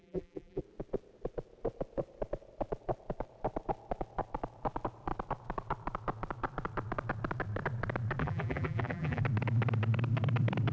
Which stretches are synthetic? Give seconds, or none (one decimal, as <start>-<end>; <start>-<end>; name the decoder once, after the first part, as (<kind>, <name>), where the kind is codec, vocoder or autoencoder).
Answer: 0.0-0.6 (vocoder, BigVGAN v2); 8.2-9.2